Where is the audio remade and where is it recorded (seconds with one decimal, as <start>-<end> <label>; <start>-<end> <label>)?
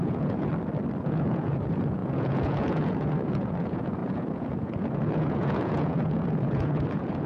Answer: 0.0-0.5 remade; 0.5-1.0 recorded; 1.0-7.3 remade